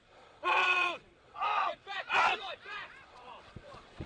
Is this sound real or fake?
fake